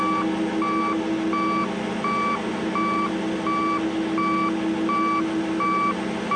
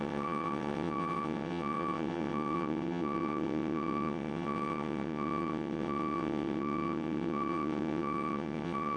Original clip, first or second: first